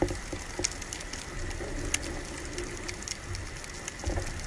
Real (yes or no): yes